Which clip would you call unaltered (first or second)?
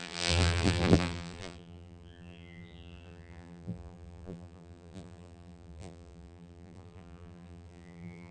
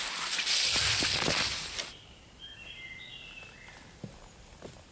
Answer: second